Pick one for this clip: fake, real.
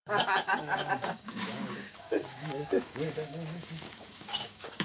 fake